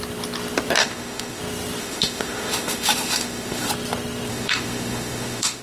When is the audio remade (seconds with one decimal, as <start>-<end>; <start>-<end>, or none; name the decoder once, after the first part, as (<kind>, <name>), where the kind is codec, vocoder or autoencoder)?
0.8-1.4 (autoencoder, DAC-VAE); 1.8-3.7; 4.3-5.6